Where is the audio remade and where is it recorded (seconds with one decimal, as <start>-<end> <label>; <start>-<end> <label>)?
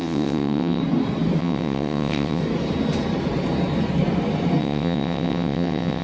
0.0-0.8 remade; 0.8-1.4 recorded; 1.4-2.4 remade; 2.4-4.6 recorded; 4.6-6.0 remade